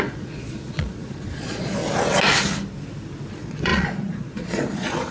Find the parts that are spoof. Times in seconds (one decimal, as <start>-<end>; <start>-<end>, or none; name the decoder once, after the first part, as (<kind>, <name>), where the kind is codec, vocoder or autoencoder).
0.0-1.8 (vocoder, Vocos); 3.3-5.1